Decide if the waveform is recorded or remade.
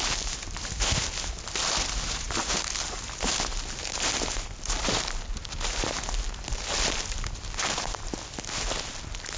recorded